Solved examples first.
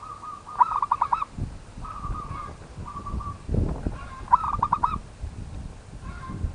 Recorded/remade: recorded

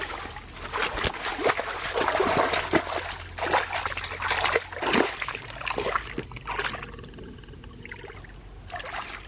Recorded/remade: recorded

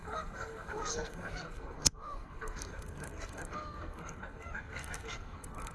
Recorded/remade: remade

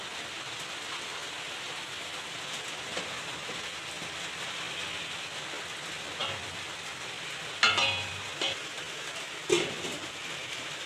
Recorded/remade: recorded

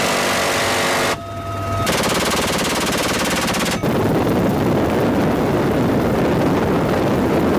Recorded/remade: recorded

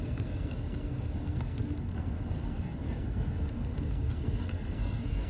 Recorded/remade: remade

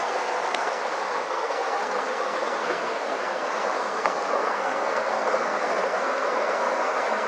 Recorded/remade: remade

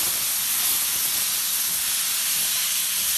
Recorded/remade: recorded